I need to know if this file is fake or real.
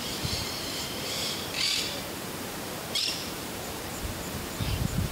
fake